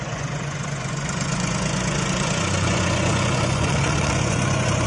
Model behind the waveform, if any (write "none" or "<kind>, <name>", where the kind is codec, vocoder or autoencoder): vocoder, Vocos